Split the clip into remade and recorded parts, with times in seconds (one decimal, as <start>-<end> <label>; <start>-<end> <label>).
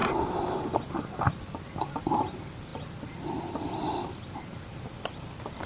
0.0-5.7 recorded